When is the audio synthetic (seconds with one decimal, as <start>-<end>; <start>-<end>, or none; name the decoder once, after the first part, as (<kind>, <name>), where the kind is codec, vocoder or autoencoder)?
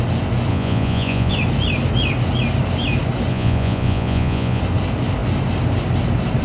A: 0.5-1.3 (vocoder, Vocos); 3.3-4.6